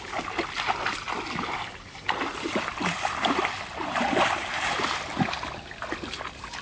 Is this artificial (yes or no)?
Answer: no